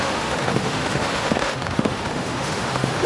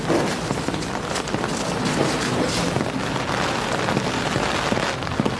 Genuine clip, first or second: second